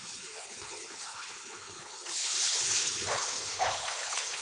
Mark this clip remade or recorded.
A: remade